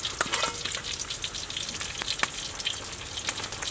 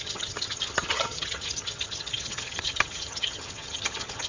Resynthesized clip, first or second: second